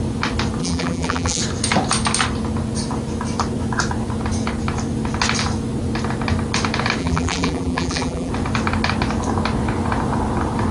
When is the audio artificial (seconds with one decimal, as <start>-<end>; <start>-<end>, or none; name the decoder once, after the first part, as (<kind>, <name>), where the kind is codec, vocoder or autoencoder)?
0.6-1.4 (vocoder, BigVGAN v2); 7.0-8.3